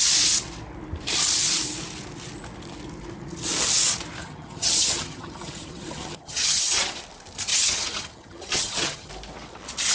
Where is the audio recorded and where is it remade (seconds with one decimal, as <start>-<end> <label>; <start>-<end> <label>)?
0.0-4.2 recorded; 4.2-7.0 remade; 7.0-7.5 recorded; 7.5-9.1 remade; 9.1-9.9 recorded